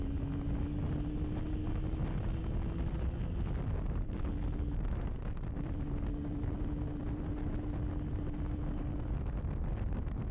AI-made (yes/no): no